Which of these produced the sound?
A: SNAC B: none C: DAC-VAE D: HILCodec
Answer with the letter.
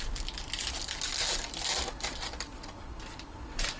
B